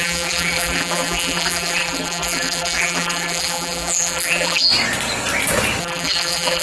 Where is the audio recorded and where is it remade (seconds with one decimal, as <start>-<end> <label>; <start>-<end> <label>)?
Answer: 0.0-4.7 remade; 4.7-5.8 recorded; 5.8-6.6 remade